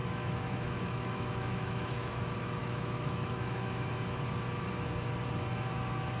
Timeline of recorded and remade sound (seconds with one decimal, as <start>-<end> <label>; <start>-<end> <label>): 0.0-2.1 remade; 2.1-2.6 recorded; 2.6-3.9 remade; 3.9-6.2 recorded